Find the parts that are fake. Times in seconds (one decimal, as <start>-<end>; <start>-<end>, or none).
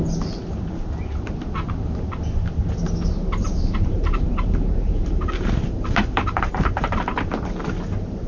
3.4-7.3